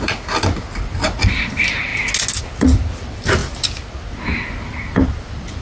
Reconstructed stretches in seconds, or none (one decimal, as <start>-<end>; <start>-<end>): 0.0-1.9; 2.4-3.4; 4.9-5.6